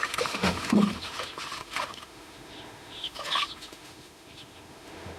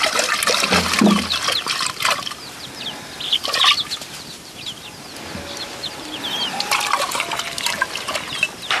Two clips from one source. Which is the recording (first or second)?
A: second